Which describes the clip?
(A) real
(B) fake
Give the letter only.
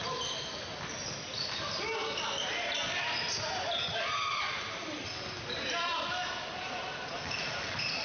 A